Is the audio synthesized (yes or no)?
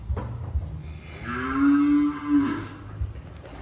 no